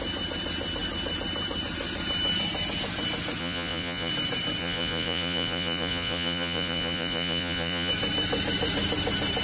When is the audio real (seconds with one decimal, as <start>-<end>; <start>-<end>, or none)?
0.0-3.4; 4.1-4.6; 7.9-9.4